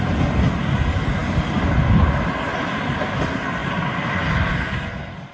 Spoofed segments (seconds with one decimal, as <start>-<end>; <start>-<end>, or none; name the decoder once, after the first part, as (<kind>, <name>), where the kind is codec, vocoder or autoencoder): none